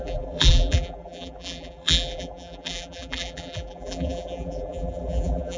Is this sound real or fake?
fake